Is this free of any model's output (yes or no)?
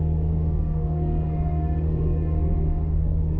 no